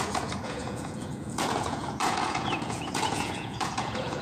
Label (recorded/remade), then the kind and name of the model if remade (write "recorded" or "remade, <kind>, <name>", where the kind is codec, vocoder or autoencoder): remade, vocoder, Vocos